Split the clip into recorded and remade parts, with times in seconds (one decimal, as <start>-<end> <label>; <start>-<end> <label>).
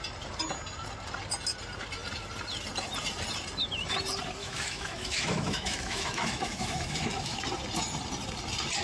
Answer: 0.0-4.4 recorded; 4.4-7.4 remade; 7.4-8.8 recorded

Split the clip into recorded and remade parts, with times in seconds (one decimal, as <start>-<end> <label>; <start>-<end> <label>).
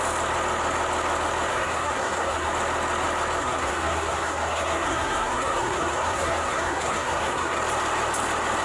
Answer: 0.0-1.5 recorded; 1.5-2.5 remade; 2.5-3.4 recorded; 3.4-7.6 remade; 7.6-8.6 recorded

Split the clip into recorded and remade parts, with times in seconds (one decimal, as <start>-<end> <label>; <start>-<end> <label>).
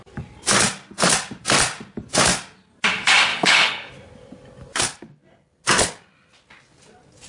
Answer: 0.0-3.3 recorded; 3.3-3.9 remade; 3.9-7.3 recorded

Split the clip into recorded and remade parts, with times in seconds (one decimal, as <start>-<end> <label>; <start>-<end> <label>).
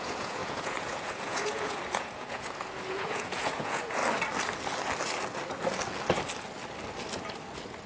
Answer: 0.0-4.0 remade; 4.0-7.9 recorded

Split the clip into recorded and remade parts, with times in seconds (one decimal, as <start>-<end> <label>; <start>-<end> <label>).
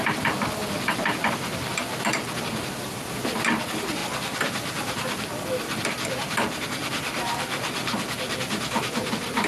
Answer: 0.0-9.5 recorded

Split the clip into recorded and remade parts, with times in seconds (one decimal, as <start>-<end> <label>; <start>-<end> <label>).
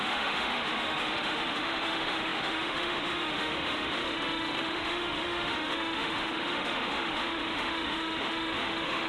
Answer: 0.0-9.1 remade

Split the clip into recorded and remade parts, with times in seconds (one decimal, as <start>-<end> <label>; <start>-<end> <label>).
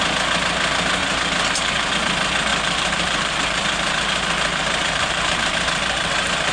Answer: 0.0-1.0 recorded; 1.0-1.9 remade; 1.9-2.5 recorded; 2.5-6.5 remade